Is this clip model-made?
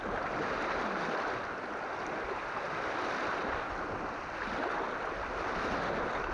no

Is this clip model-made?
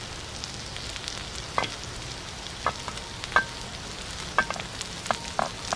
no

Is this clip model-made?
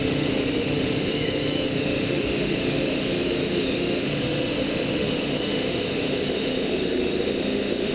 yes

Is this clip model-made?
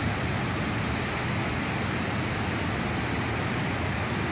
no